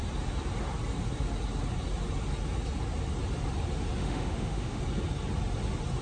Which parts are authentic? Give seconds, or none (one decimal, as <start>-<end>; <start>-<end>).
0.0-4.0; 4.8-6.0